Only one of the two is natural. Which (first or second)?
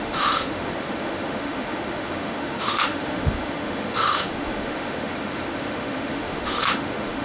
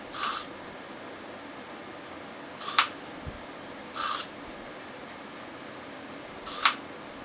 second